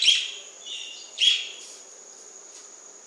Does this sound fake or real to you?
real